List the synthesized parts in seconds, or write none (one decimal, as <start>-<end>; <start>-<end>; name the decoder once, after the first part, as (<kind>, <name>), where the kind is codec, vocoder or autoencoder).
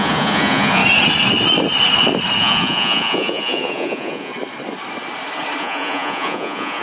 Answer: 0.0-0.8 (vocoder, Vocos); 2.4-4.3; 5.6-6.8